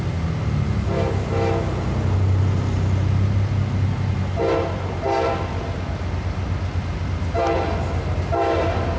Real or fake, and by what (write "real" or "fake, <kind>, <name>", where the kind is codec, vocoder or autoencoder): real